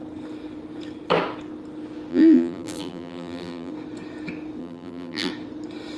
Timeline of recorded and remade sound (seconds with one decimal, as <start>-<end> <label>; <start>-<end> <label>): 0.0-2.1 recorded; 2.1-3.7 remade; 3.7-4.6 recorded; 4.6-5.3 remade; 5.3-6.0 recorded